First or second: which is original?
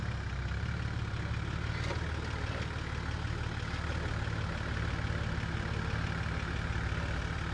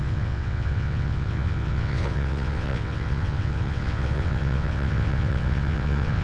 first